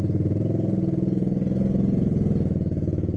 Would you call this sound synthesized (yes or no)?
no